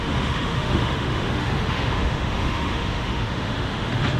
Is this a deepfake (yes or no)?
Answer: yes